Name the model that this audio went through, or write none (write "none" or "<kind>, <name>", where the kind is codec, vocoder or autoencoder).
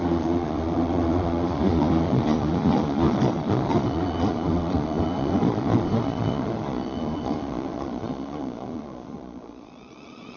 vocoder, Vocos